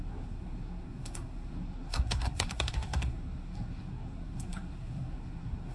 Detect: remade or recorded remade